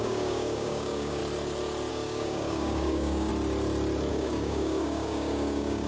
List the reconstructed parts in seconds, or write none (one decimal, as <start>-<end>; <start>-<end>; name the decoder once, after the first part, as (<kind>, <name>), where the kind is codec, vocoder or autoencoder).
0.0-1.2 (codec, DAC); 1.9-3.3; 4.1-5.9